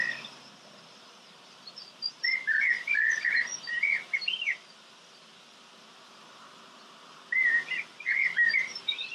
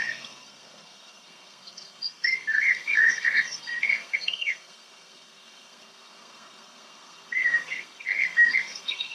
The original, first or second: first